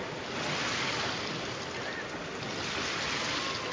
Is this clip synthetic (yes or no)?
no